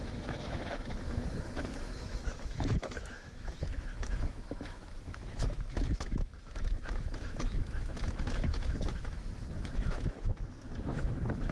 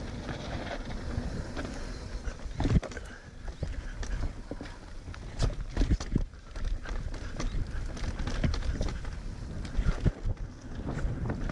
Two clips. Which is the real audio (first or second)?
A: second